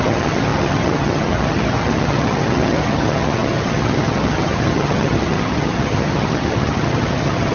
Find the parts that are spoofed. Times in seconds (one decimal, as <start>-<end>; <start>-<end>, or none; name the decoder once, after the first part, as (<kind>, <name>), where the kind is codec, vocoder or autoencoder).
0.0-7.5 (vocoder, HiFi-GAN)